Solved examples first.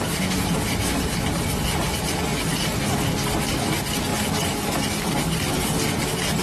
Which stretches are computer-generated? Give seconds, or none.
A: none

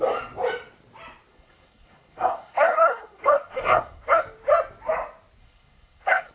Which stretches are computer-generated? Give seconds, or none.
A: 1.3-4.2 (codec, SNAC); 5.4-6.3

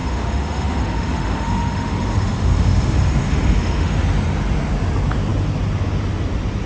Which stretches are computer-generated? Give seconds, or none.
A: 0.0-4.0 (autoencoder, DAC-VAE)

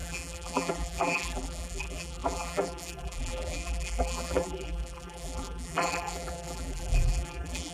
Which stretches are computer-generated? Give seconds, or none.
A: 0.0-7.7 (vocoder, BigVGAN v2)

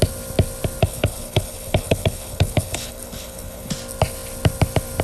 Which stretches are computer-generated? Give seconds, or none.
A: 0.8-3.7 (codec, HILCodec)

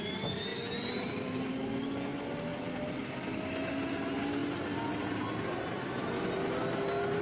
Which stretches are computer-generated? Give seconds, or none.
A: 0.5-1.5 (vocoder, BigVGAN v2); 2.5-3.9; 4.4-5.2